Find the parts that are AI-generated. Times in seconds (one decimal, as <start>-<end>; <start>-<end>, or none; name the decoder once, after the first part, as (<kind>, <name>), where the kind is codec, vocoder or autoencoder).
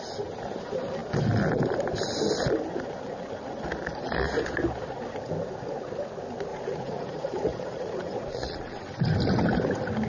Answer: 6.5-8.8 (vocoder, Vocos)